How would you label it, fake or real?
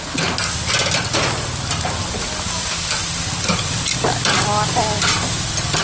real